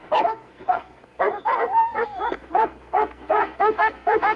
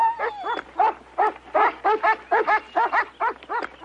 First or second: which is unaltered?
second